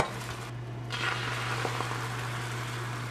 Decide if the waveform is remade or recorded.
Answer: recorded